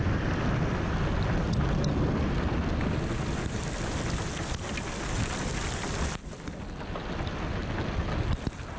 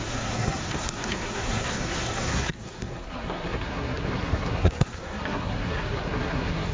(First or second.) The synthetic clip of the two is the second